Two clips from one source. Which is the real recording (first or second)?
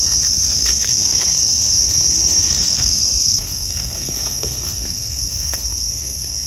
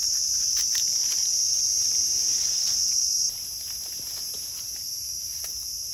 second